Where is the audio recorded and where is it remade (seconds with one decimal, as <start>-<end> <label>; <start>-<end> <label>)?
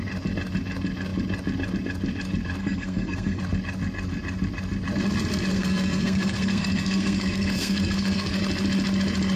0.0-2.6 recorded; 2.6-3.4 remade; 3.4-5.5 recorded; 5.5-8.4 remade; 8.4-9.4 recorded